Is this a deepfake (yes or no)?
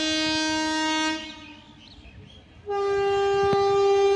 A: no